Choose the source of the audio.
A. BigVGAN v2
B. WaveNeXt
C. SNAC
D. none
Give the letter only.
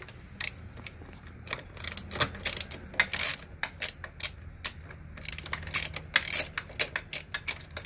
D